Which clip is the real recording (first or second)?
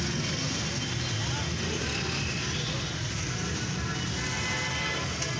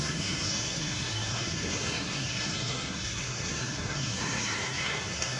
first